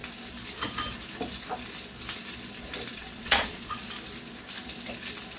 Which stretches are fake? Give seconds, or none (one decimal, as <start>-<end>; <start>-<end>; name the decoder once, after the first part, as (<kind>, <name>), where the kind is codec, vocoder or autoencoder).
2.9-3.8 (vocoder, Vocos)